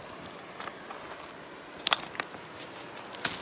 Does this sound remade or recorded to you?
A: recorded